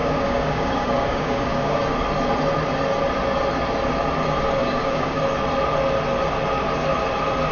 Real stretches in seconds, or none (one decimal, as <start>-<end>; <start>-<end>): 1.8-4.6; 5.2-7.5